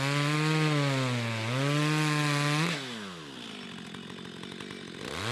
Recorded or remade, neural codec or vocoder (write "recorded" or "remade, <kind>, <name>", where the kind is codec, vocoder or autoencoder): recorded